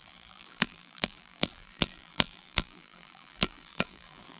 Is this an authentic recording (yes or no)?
no